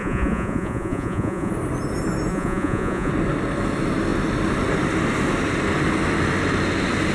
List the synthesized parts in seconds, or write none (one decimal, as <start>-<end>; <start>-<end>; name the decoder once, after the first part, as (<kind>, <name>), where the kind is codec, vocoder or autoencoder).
0.0-1.5 (vocoder, Vocos); 2.3-3.1